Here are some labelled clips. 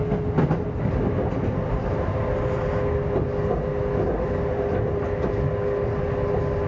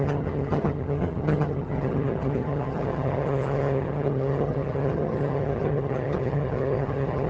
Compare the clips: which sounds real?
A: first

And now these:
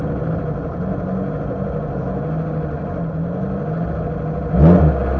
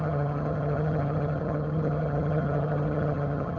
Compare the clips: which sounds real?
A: first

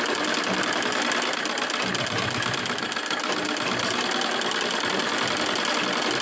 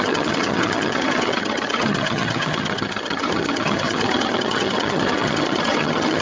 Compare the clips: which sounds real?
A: first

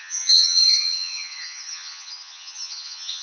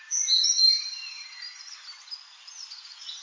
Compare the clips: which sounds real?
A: second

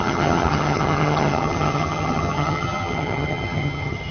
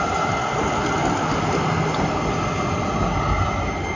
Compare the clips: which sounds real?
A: second